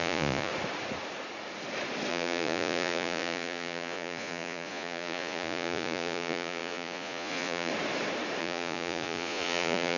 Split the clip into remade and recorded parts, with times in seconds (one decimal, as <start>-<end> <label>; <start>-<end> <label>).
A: 0.0-0.5 remade; 0.5-2.1 recorded; 2.1-7.7 remade; 7.7-8.4 recorded; 8.4-10.0 remade